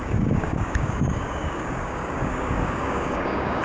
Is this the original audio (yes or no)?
no